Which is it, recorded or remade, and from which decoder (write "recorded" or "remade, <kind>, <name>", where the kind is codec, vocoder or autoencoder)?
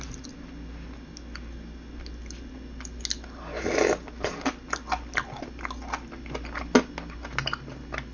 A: recorded